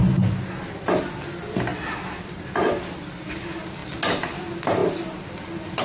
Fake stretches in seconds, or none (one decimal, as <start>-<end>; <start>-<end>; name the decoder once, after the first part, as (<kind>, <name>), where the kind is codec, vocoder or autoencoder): none